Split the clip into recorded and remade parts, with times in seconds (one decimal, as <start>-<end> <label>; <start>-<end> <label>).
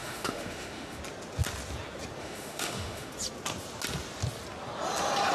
0.0-1.0 remade; 1.0-2.2 recorded; 2.2-3.1 remade; 3.1-5.3 recorded